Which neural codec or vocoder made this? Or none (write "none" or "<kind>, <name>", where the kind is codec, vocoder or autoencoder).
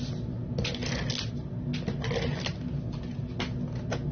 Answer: none